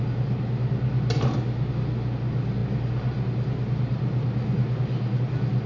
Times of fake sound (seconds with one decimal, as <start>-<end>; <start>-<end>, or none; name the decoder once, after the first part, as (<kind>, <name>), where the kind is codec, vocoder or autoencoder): none